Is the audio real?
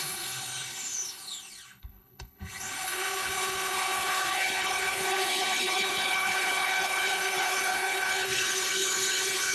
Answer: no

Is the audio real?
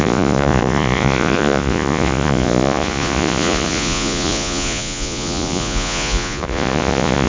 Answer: no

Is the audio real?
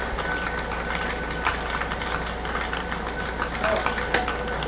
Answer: yes